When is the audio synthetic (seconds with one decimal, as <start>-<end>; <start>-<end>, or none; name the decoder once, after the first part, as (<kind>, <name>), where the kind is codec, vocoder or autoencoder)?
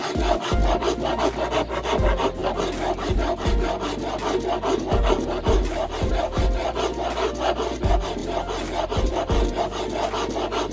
none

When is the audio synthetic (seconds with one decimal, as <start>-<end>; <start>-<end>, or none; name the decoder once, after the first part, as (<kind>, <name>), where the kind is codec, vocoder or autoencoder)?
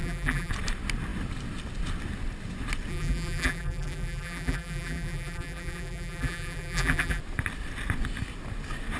0.0-0.5 (vocoder, BigVGAN v2); 2.9-7.2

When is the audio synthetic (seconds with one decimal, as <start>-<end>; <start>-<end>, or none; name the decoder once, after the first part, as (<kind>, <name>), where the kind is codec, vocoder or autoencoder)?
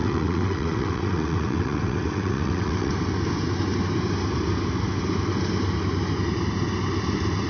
0.0-2.9 (vocoder, WaveNeXt)